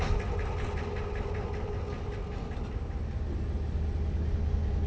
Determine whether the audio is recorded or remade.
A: recorded